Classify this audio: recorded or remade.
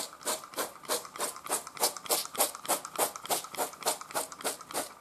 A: recorded